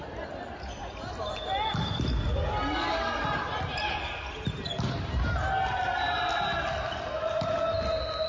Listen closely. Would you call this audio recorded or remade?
recorded